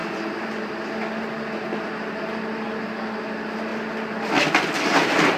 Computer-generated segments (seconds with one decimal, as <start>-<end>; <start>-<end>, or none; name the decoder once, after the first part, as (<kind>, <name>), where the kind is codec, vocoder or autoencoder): none